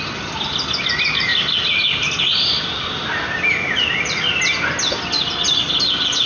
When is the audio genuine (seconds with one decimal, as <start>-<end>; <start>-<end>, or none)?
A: 0.0-6.3